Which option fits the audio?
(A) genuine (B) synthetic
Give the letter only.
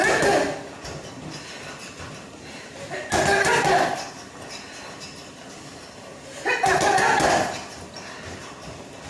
A